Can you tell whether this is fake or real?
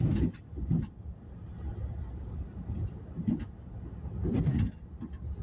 real